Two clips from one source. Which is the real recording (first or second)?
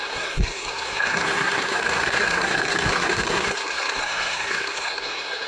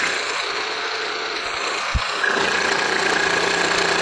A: second